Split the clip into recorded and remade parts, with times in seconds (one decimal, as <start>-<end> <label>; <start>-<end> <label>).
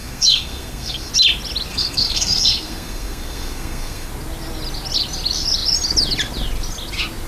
0.0-1.1 remade; 1.1-1.7 recorded; 1.7-4.1 remade; 4.1-7.3 recorded